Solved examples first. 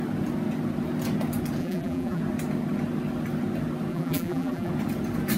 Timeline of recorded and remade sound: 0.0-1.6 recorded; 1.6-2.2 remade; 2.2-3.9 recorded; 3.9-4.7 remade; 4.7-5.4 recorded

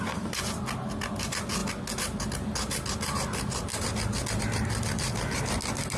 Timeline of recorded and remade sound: 0.0-6.0 recorded